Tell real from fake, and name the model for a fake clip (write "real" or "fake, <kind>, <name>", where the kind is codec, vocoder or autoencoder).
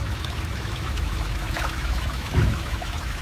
fake, autoencoder, DAC-VAE